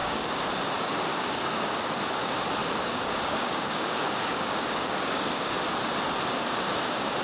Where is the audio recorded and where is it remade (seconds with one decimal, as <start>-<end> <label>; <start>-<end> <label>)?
0.0-0.5 remade; 0.5-1.1 recorded; 1.1-1.9 remade; 1.9-2.6 recorded; 2.6-5.6 remade; 5.6-7.2 recorded